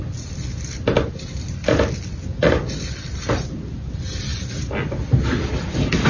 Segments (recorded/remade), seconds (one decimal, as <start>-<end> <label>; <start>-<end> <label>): 0.0-6.1 recorded